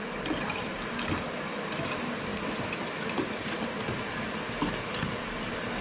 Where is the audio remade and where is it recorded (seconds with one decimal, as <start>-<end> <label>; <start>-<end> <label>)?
0.0-5.8 recorded